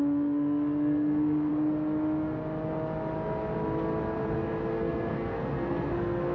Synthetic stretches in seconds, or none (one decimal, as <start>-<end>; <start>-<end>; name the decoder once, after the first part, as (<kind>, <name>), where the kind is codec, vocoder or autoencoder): 0.0-1.5 (codec, SNAC); 4.7-6.3